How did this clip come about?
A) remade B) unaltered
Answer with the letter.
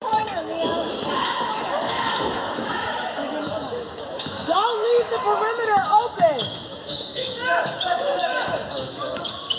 A